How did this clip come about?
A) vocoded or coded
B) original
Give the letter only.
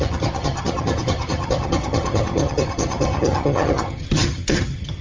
A